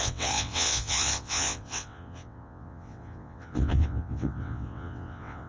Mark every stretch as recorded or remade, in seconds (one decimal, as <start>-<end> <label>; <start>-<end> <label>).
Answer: 0.0-5.5 remade